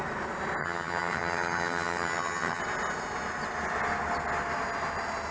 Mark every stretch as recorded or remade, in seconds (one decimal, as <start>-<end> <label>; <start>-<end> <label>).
0.0-0.6 recorded; 0.6-2.6 remade; 2.6-5.3 recorded